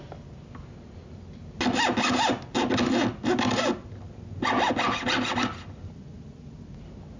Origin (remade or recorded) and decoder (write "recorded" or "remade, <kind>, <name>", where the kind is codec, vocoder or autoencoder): recorded